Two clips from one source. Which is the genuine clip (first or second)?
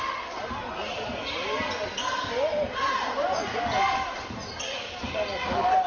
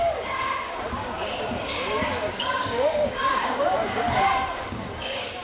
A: first